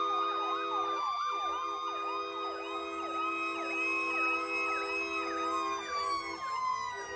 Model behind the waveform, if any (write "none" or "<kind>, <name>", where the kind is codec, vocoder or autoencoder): none